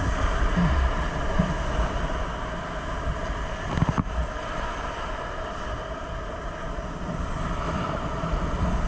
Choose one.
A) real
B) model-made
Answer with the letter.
A